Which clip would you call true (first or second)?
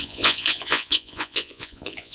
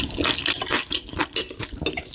second